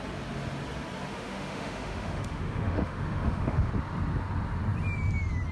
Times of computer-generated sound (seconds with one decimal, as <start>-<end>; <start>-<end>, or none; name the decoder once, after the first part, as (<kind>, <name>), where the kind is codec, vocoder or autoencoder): 1.1-3.7 (autoencoder, DAC-VAE)